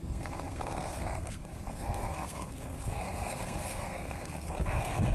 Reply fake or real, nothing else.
fake